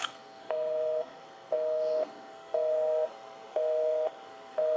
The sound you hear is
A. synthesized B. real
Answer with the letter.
A